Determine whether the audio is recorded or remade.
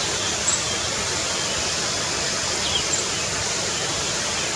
recorded